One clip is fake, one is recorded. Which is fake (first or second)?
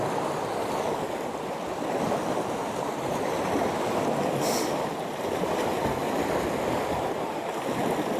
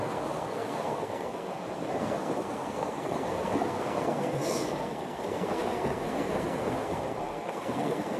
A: second